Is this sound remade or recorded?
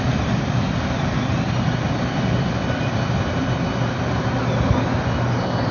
recorded